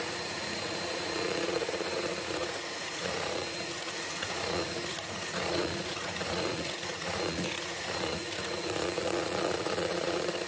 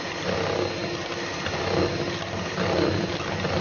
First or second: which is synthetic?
first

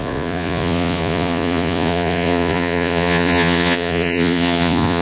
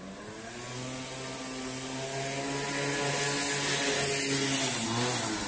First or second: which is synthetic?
first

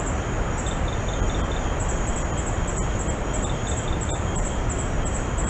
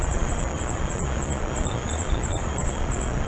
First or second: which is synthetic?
second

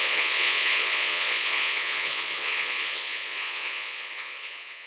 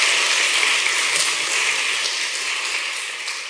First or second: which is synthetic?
first